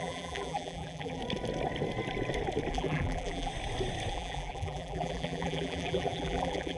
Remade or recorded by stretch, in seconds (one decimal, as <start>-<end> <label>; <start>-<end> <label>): 0.0-1.2 remade; 1.2-2.7 recorded; 2.7-3.5 remade; 3.5-4.1 recorded; 4.1-6.8 remade